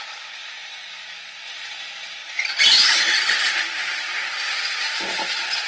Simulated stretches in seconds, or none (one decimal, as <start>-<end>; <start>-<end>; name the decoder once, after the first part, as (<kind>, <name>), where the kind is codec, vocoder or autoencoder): 0.0-2.2 (vocoder, BigVGAN v2); 3.0-5.7